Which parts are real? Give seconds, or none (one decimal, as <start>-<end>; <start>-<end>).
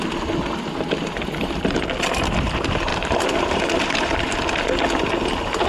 0.0-2.9; 4.2-5.7